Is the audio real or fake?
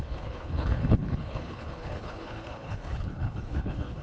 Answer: fake